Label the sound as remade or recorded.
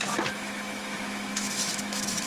remade